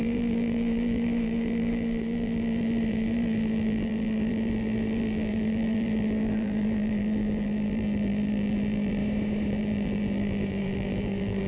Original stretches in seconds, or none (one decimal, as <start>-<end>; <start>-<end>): 9.0-9.5